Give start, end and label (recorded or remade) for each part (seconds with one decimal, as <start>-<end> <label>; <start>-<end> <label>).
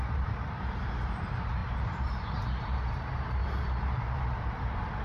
0.0-5.0 remade